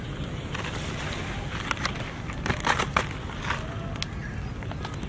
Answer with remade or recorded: recorded